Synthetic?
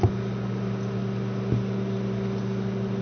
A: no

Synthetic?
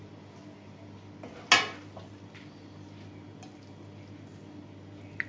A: no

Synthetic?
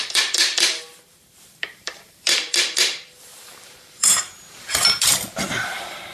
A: yes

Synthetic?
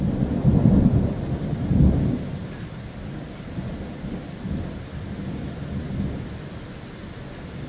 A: no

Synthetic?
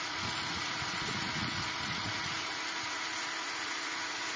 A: yes